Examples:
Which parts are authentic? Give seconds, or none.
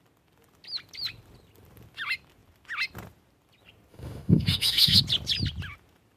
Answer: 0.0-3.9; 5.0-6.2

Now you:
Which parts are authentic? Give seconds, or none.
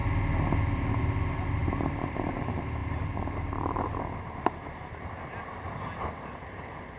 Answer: 0.0-1.6; 2.4-7.0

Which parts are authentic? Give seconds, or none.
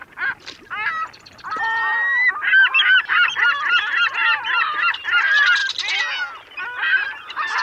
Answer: 0.0-7.6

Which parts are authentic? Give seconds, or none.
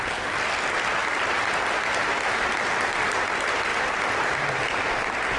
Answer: 0.0-5.4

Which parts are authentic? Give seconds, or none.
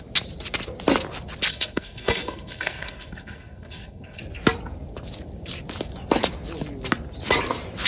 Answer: 0.0-1.5; 4.2-7.9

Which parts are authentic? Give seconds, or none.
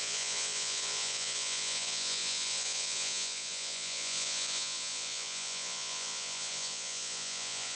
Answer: none